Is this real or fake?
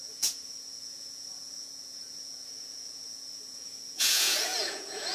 fake